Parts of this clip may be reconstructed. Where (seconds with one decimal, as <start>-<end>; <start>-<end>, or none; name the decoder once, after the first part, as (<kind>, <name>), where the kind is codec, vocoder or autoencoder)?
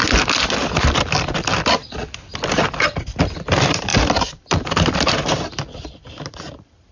0.0-2.3 (vocoder, BigVGAN v2); 2.9-6.9